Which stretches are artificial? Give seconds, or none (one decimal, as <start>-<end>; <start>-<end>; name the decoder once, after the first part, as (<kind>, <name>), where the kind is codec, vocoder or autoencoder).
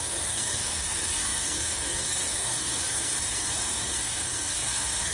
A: 0.0-5.1 (codec, SNAC)